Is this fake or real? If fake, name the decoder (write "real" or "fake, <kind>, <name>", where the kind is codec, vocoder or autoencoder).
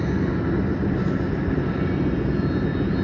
real